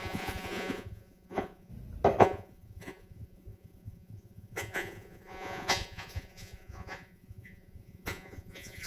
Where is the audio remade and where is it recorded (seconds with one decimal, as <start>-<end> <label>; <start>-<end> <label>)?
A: 0.0-1.7 remade; 1.7-2.2 recorded; 2.2-8.9 remade

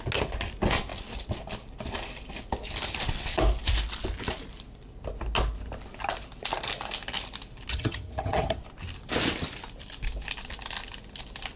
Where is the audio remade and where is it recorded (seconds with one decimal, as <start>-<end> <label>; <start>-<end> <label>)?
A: 0.0-7.7 recorded; 7.7-8.6 remade; 8.6-11.6 recorded